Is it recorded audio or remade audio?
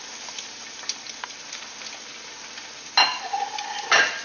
recorded